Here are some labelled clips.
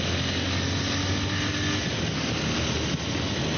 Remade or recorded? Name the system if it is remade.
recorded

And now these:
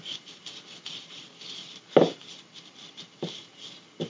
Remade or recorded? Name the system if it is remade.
recorded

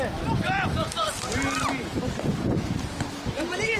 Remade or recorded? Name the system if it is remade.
recorded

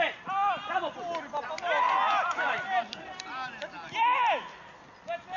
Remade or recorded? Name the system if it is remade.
recorded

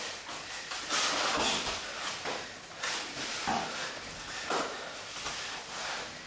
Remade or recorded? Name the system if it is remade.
recorded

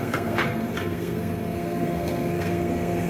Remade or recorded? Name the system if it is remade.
remade, codec, SNAC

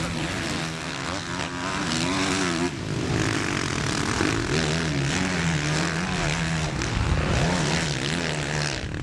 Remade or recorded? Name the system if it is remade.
recorded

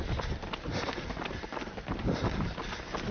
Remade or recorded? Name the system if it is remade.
recorded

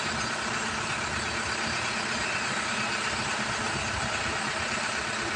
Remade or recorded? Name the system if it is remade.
recorded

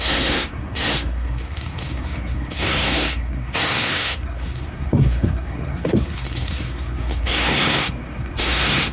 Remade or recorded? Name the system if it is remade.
remade, codec, SNAC